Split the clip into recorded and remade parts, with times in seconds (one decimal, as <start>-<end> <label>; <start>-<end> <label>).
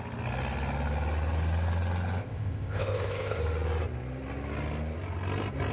0.0-2.2 recorded; 2.2-3.4 remade; 3.4-5.7 recorded